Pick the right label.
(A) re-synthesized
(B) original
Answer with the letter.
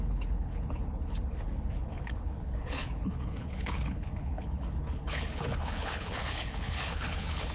A